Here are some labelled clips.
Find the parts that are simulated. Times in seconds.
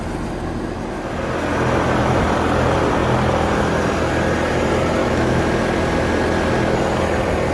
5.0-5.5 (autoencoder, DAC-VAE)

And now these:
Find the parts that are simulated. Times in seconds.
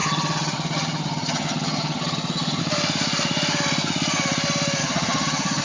0.0-2.6 (vocoder, HiFi-GAN); 4.8-5.6